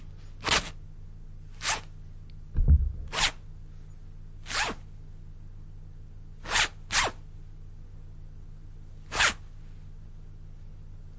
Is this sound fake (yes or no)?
no